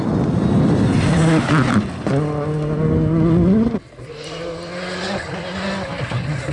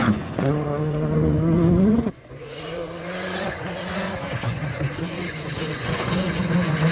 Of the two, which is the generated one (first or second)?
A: second